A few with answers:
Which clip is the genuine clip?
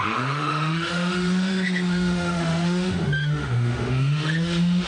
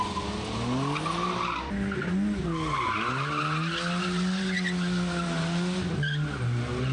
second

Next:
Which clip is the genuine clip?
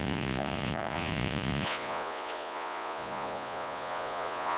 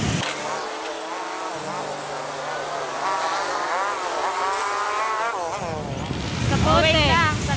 second